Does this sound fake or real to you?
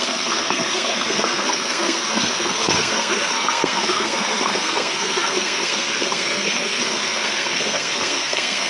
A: fake